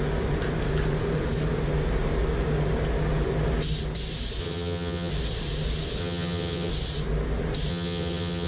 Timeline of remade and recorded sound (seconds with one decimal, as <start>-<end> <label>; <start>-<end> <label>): 0.0-4.4 recorded; 4.4-5.1 remade; 5.1-6.0 recorded; 6.0-6.7 remade; 6.7-7.7 recorded; 7.7-8.5 remade